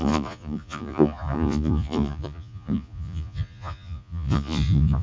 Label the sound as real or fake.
fake